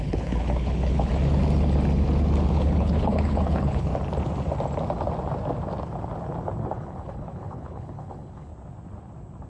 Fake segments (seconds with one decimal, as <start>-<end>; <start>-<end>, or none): 0.0-1.1; 2.5-3.9; 6.6-8.5

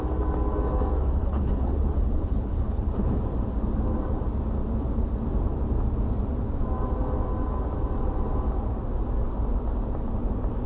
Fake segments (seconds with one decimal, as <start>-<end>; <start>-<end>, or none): 1.2-3.2

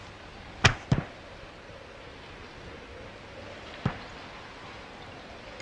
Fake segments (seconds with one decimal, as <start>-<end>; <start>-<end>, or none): none

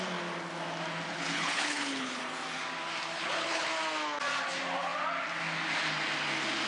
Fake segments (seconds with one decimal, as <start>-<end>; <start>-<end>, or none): 1.1-2.2; 3.1-3.7

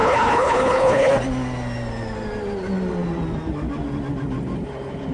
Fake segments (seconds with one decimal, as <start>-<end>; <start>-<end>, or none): 0.0-1.1

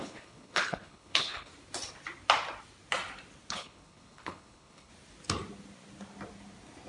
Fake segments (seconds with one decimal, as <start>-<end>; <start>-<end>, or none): 0.0-1.5; 3.5-4.9